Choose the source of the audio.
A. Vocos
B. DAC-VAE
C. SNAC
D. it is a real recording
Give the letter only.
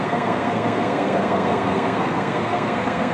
C